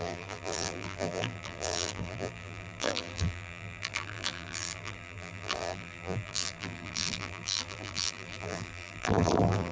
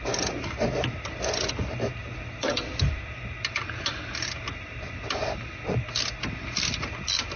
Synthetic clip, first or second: first